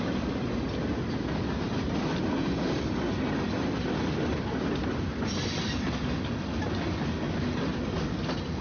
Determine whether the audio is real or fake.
real